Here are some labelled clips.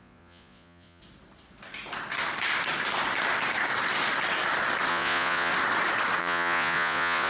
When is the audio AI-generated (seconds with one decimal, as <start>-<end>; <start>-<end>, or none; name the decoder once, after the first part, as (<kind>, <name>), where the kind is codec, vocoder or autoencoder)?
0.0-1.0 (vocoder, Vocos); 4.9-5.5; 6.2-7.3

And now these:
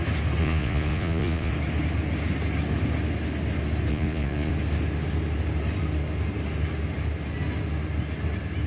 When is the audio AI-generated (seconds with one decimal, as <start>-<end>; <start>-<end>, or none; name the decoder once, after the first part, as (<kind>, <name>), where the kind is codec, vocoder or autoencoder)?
0.4-1.5 (vocoder, Vocos); 3.9-4.5

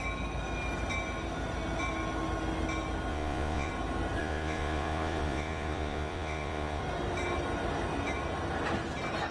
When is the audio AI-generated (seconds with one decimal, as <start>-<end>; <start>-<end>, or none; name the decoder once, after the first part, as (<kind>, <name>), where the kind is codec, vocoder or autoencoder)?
3.1-3.7 (vocoder, Vocos); 4.2-6.8